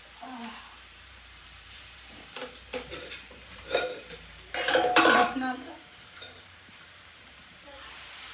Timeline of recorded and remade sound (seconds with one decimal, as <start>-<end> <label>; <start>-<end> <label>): 0.0-2.4 remade; 2.4-2.9 recorded; 2.9-8.3 remade